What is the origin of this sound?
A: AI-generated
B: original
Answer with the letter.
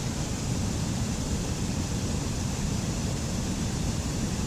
A